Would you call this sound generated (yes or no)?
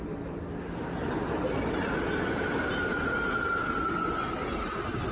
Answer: no